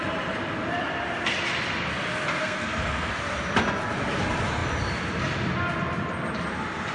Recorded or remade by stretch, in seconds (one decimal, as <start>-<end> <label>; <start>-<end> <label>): 0.0-2.4 recorded; 2.4-3.1 remade; 3.1-6.9 recorded